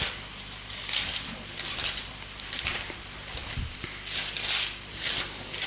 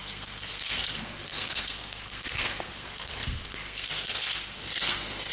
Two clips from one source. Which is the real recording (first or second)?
first